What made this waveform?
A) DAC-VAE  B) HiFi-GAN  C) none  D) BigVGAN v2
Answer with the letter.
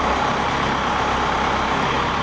D